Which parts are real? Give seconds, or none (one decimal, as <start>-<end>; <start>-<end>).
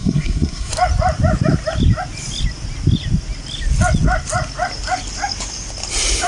0.7-6.3